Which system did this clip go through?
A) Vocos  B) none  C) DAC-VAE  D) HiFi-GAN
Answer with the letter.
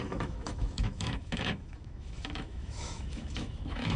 C